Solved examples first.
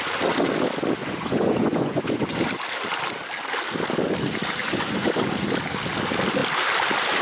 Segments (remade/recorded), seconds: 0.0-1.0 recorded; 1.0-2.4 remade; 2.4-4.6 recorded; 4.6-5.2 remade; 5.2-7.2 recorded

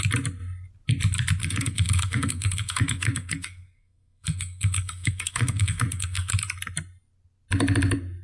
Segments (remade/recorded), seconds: 0.0-1.4 recorded; 1.4-6.3 remade; 6.3-8.2 recorded

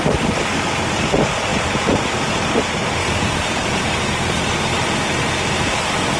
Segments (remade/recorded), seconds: 0.0-6.2 recorded

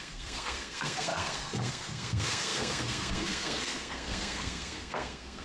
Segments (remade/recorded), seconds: 0.0-5.4 remade